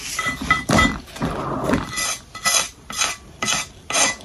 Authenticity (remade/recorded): recorded